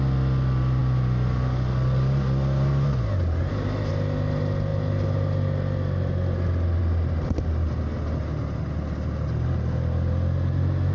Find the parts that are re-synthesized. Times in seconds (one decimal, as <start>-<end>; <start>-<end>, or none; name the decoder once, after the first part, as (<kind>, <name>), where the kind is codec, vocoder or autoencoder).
none